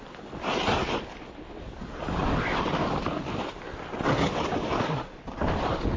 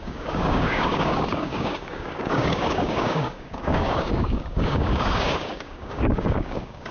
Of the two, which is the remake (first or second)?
second